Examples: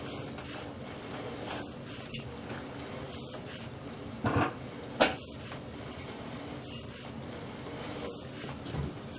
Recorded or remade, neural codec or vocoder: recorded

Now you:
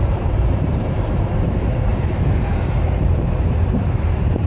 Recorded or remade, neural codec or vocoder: remade, vocoder, BigVGAN v2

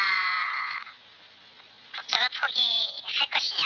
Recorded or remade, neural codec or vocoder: remade, vocoder, Vocos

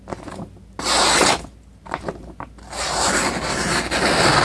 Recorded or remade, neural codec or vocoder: recorded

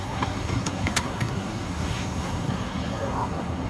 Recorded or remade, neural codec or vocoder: remade, codec, SNAC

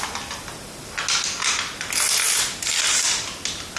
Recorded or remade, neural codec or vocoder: recorded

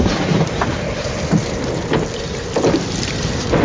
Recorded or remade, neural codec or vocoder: recorded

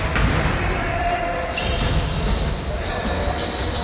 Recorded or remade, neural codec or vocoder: remade, vocoder, BigVGAN v2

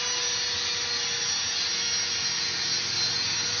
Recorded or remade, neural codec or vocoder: recorded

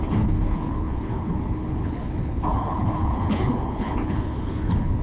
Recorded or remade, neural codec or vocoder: remade, codec, HILCodec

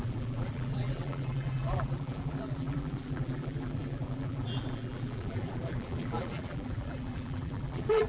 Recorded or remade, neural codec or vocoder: remade, vocoder, BigVGAN v2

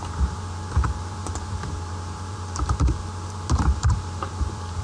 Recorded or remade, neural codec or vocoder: remade, vocoder, BigVGAN v2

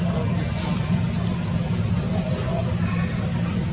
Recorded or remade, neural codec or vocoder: recorded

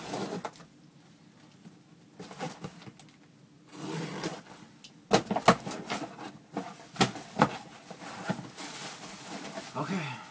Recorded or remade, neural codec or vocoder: recorded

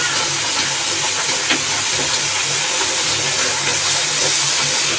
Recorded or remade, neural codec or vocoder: recorded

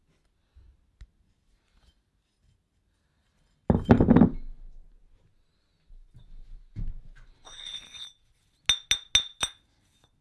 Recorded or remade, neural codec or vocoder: recorded